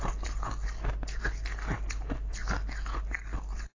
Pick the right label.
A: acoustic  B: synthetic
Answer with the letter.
A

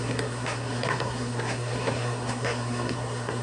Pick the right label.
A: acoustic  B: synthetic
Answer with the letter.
B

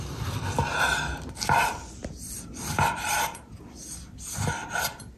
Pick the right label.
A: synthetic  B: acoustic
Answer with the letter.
B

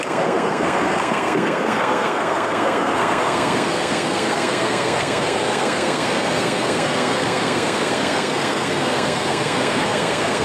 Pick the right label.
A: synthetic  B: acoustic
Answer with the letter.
A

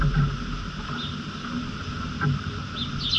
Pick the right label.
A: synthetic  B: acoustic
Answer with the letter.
B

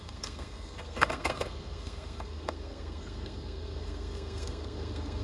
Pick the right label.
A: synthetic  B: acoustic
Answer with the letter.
A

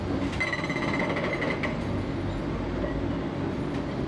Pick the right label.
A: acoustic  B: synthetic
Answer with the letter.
A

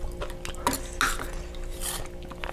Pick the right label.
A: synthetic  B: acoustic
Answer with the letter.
B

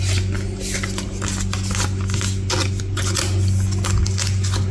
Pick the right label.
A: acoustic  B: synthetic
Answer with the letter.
A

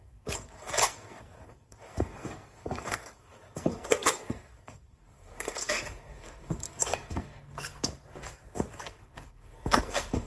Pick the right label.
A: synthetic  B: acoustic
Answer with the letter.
A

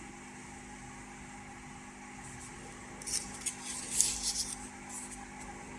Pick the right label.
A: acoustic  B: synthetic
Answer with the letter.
A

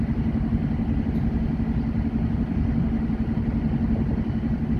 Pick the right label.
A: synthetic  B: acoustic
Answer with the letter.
B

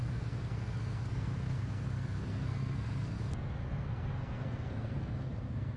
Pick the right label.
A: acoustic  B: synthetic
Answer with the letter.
B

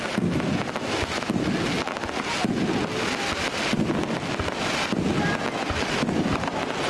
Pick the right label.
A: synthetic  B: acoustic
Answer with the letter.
B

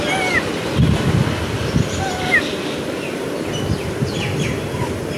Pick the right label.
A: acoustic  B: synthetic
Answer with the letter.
A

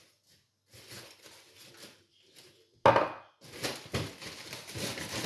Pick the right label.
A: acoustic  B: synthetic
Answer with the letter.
A